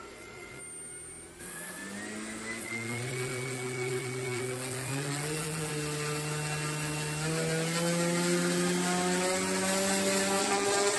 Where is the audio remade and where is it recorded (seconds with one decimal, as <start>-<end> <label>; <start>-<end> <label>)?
0.0-0.6 remade; 0.6-1.4 recorded; 1.4-1.8 remade; 1.8-2.6 recorded; 2.6-5.7 remade; 5.7-10.4 recorded; 10.4-11.0 remade